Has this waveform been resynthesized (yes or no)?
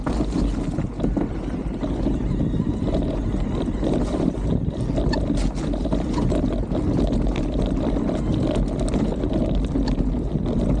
no